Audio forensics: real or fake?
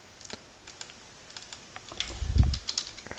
real